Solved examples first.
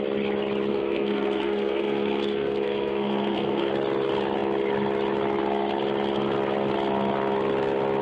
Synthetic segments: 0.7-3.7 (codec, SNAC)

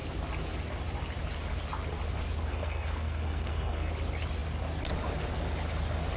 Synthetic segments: 2.5-3.9 (codec, SNAC)

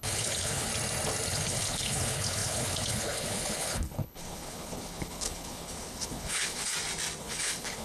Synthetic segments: 0.0-0.7 (codec, HILCodec); 1.3-6.7; 7.2-7.8

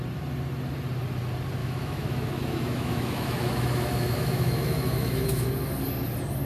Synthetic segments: 1.6-5.5 (autoencoder, DAC-VAE)

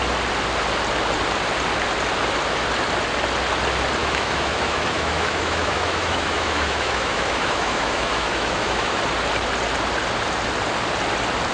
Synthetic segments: 4.0-9.0 (autoencoder, DAC-VAE)

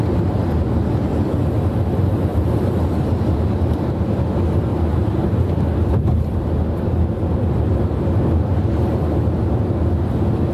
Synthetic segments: 2.3-4.2 (vocoder, BigVGAN v2); 4.7-5.6

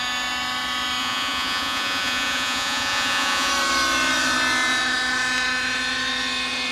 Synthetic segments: 1.0-3.5 (vocoder, Vocos)

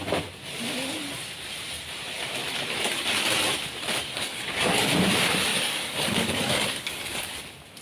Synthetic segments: 4.1-4.9 (codec, DAC); 5.5-7.3